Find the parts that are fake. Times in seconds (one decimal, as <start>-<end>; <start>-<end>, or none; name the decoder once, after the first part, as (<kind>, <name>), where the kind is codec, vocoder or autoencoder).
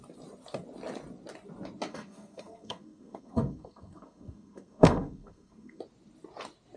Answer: 1.9-5.8 (codec, SNAC)